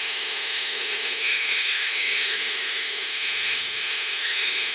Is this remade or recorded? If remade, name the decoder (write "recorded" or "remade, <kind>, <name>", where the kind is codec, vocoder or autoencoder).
remade, autoencoder, DAC-VAE